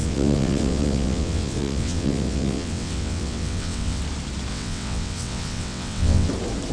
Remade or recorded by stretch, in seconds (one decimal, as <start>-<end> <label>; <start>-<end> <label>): 0.0-4.0 remade; 4.0-4.5 recorded; 4.5-6.3 remade; 6.3-6.7 recorded